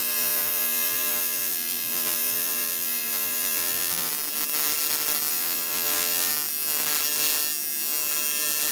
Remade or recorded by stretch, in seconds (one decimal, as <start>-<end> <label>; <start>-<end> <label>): 0.0-4.1 remade; 4.1-5.3 recorded; 5.3-6.3 remade; 6.3-8.7 recorded